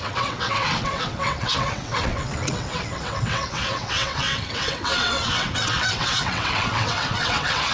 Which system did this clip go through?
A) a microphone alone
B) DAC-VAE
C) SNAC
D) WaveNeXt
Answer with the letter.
D